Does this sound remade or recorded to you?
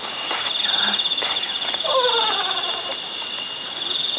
recorded